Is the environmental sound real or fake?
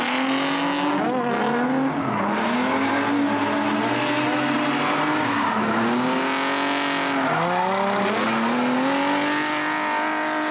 real